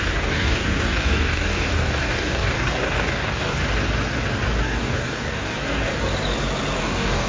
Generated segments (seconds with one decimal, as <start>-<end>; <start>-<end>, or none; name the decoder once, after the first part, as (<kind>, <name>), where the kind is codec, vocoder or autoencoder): 0.0-3.6 (codec, DAC); 4.6-5.9; 6.8-7.3